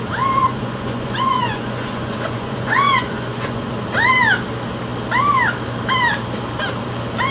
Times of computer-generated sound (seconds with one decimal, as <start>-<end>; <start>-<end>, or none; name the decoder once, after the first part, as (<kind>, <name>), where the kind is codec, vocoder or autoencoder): 0.4-3.7 (vocoder, Vocos)